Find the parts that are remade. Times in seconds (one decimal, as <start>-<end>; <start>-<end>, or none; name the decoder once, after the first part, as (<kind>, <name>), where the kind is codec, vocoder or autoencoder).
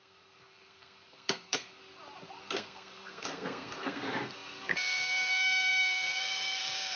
0.0-1.8 (codec, SNAC); 2.4-7.0